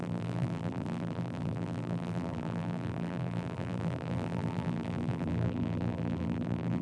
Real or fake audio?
fake